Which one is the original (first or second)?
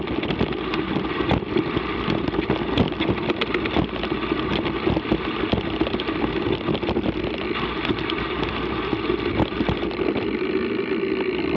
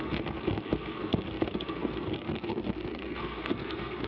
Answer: first